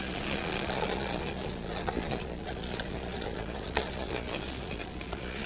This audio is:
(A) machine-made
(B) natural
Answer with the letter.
A